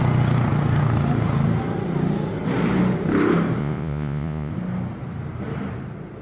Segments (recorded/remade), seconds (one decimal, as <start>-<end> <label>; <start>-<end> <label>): 0.0-3.6 recorded; 3.6-4.5 remade; 4.5-6.2 recorded